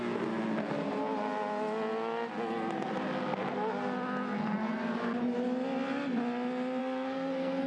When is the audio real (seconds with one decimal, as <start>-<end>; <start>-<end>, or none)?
0.0-6.8